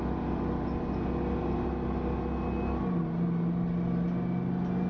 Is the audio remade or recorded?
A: recorded